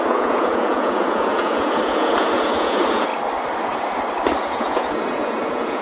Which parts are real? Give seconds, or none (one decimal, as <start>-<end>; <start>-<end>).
3.1-4.4